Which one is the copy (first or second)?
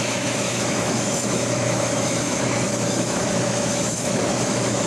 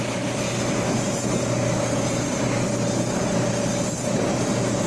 first